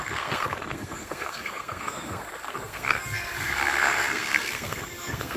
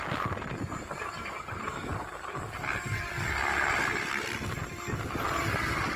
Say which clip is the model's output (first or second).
first